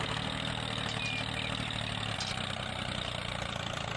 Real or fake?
real